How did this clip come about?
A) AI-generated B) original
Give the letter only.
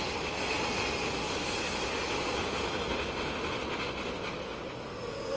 B